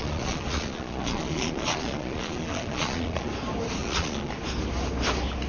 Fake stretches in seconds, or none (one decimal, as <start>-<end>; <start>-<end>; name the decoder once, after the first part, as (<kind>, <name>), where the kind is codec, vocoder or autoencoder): 0.0-3.3 (vocoder, Vocos); 3.8-4.3